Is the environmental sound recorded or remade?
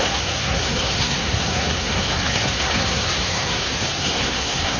remade